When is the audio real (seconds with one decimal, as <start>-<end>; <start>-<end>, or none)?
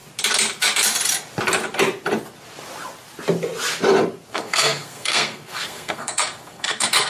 0.0-4.3